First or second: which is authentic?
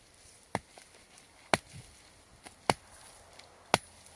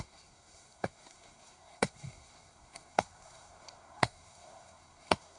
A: first